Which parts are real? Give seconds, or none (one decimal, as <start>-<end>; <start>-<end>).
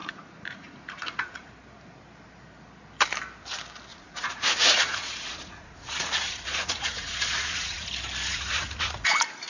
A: 1.5-3.9; 7.9-8.3